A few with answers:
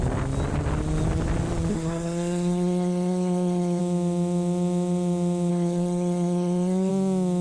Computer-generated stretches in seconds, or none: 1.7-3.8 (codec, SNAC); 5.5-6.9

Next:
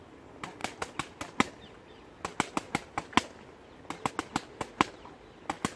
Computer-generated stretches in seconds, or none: none

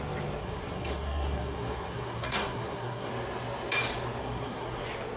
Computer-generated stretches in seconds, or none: 0.4-3.1 (codec, SNAC); 4.2-4.8

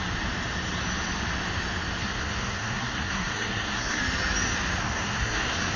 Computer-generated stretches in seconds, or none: 2.0-4.0 (codec, SNAC); 4.8-5.8